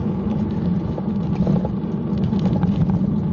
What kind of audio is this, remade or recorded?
recorded